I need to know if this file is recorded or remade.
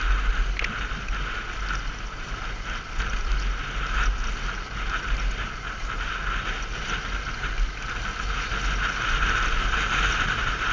recorded